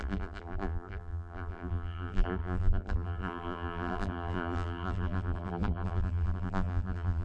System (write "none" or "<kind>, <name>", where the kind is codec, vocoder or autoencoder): vocoder, BigVGAN v2